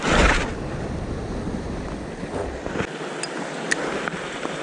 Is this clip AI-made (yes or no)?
no